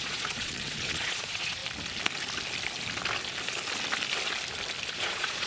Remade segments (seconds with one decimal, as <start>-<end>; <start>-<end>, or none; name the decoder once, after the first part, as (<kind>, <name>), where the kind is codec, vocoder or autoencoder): 0.0-1.6 (vocoder, Vocos); 4.9-5.5